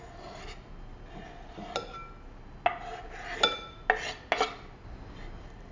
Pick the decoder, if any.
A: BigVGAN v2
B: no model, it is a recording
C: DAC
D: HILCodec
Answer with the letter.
B